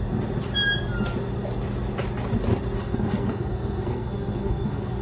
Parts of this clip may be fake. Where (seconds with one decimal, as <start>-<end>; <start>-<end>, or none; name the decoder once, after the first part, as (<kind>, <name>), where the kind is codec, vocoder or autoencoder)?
2.8-5.0 (codec, SNAC)